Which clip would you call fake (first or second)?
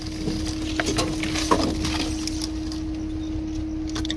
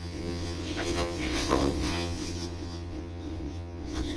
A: second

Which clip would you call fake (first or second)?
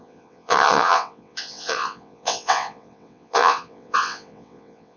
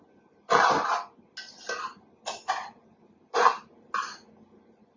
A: first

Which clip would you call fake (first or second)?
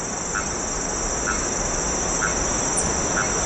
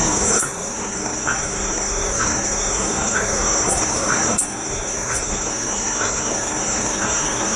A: second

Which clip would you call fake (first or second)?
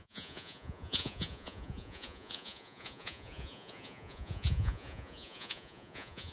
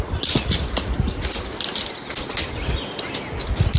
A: first